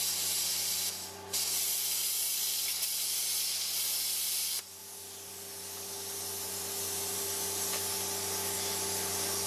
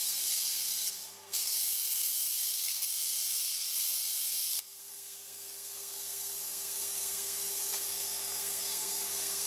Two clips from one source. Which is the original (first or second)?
first